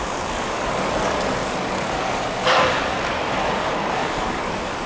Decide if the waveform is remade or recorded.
remade